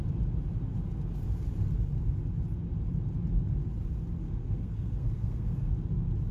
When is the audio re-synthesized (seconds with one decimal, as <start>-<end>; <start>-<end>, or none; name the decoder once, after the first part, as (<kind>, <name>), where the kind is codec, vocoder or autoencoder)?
4.2-5.7 (codec, SNAC)